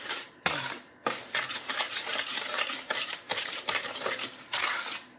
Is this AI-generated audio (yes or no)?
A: yes